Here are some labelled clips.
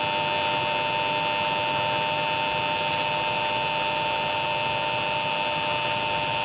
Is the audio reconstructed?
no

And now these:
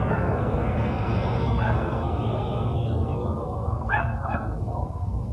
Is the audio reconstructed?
yes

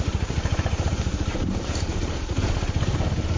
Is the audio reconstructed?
yes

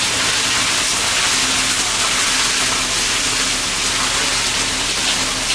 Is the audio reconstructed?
no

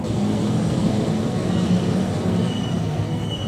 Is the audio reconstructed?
yes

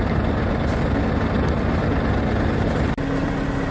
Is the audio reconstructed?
no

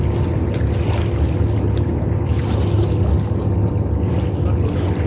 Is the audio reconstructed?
no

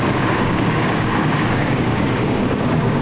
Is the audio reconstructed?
yes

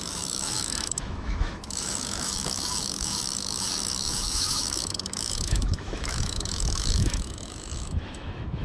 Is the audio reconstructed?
yes